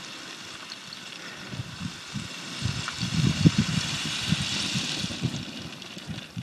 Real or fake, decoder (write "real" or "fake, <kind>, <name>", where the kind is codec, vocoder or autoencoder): fake, vocoder, BigVGAN v2